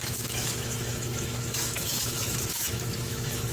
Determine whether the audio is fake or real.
fake